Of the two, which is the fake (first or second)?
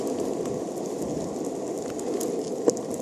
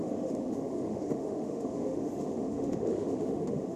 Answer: second